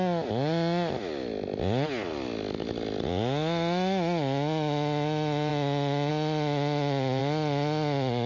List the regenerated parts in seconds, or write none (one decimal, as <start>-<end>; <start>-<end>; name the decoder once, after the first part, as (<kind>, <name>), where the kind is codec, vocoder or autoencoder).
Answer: none